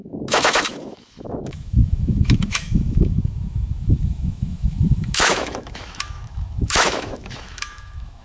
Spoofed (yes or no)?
yes